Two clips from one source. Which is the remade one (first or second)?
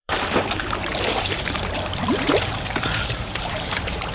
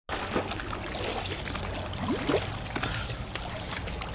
first